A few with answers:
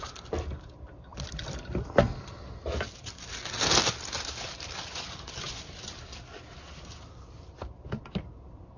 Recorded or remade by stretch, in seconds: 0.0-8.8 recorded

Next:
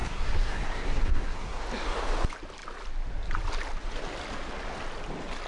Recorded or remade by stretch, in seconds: 0.0-1.6 remade; 1.6-5.5 recorded

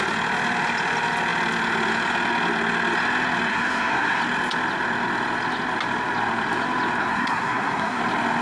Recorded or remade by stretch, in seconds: 0.0-3.5 recorded; 3.5-4.2 remade; 4.2-7.0 recorded; 7.0-8.0 remade; 8.0-8.4 recorded

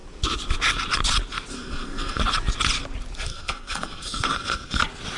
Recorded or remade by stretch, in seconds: 0.0-1.5 recorded; 1.5-2.2 remade; 2.2-3.3 recorded; 3.3-4.8 remade; 4.8-5.2 recorded

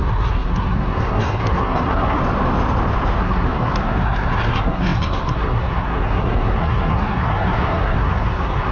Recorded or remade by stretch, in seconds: 0.0-2.2 remade; 2.2-3.2 recorded; 3.2-8.7 remade

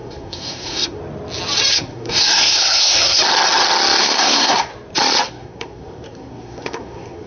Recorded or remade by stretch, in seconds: 0.0-1.0 remade; 1.0-1.7 recorded; 1.7-3.2 remade; 3.2-4.0 recorded; 4.0-4.7 remade; 4.7-5.3 recorded; 5.3-7.3 remade